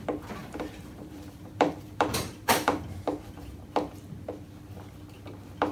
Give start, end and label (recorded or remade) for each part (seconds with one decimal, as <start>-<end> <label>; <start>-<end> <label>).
0.0-0.4 recorded; 0.4-3.6 remade; 3.6-5.7 recorded